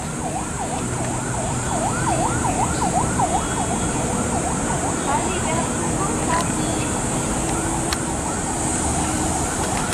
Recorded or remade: recorded